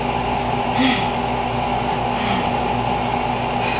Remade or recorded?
recorded